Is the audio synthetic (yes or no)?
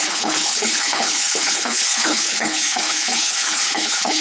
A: yes